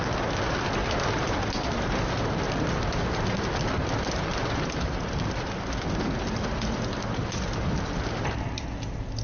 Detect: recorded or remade recorded